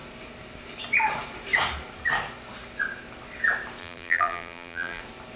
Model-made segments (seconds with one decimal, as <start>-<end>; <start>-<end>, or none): 3.8-5.0